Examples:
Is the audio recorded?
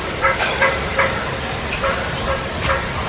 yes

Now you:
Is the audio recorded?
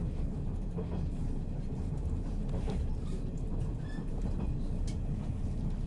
no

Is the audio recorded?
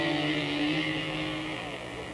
no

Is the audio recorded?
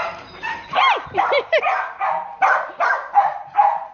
no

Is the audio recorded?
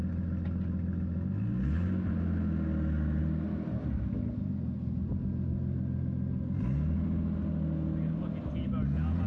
yes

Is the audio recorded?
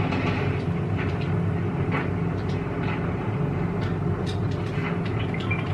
yes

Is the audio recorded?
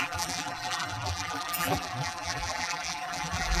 no